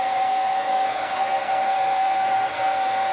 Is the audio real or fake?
fake